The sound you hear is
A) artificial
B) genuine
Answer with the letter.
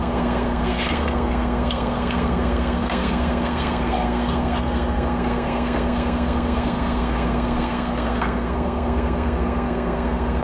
A